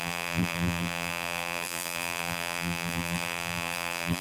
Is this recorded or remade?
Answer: remade